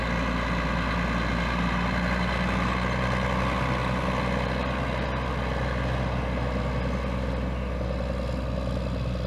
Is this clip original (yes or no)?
yes